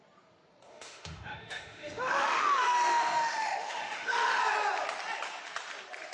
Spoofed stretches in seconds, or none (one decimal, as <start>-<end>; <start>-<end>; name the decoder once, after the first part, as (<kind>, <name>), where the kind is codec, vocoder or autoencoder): 0.7-4.4 (autoencoder, DAC-VAE)